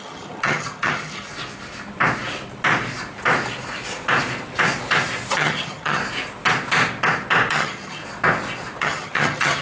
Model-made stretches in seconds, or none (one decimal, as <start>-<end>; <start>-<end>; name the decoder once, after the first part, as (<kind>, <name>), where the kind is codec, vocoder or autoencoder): 0.0-1.3 (vocoder, HiFi-GAN); 5.3-6.0; 7.5-8.0; 8.8-9.6